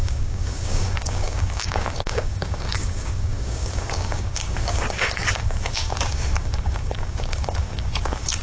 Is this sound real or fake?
fake